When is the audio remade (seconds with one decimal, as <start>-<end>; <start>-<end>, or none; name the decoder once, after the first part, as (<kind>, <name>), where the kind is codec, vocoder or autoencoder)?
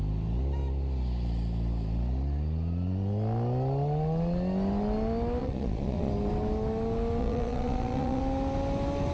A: 5.4-6.1 (vocoder, Vocos); 7.2-8.2